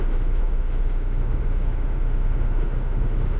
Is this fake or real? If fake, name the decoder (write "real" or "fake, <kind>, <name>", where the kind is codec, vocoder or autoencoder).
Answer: fake, autoencoder, DAC-VAE